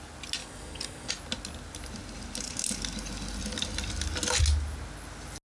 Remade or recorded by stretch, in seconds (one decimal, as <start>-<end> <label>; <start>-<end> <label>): 0.0-0.4 recorded; 0.4-1.1 remade; 1.1-5.6 recorded